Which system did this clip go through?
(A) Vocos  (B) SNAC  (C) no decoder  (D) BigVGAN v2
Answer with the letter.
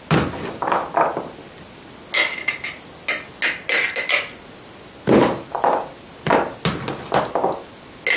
C